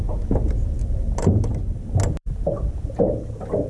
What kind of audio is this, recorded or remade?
recorded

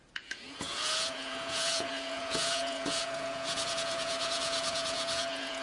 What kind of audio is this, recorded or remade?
remade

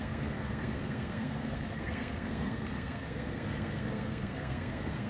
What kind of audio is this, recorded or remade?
remade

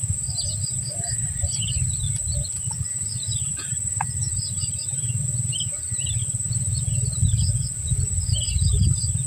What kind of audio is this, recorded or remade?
recorded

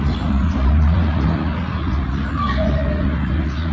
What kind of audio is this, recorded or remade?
remade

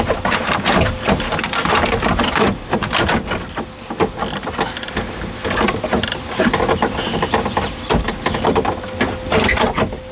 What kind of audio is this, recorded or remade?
recorded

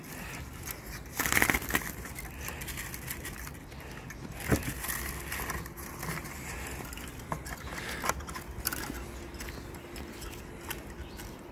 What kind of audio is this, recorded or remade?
recorded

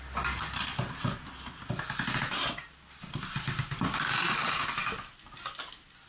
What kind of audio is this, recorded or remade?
recorded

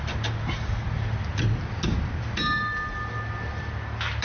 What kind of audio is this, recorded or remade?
recorded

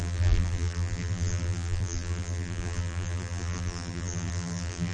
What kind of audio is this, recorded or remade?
remade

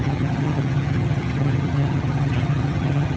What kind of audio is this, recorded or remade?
remade